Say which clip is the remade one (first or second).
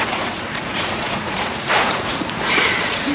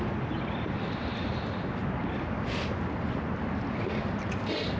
first